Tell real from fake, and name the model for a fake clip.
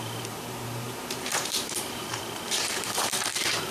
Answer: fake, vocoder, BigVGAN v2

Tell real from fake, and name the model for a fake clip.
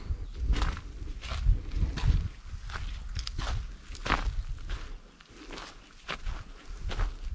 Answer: real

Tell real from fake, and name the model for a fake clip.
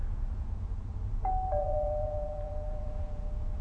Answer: fake, vocoder, Vocos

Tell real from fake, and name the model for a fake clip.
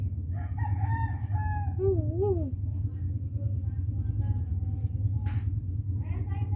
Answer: real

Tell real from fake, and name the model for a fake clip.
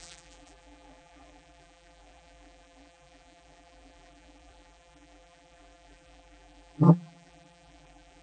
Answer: fake, vocoder, BigVGAN v2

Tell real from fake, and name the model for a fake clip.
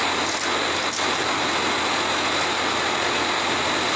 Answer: real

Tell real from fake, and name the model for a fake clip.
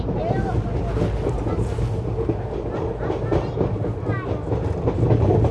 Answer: real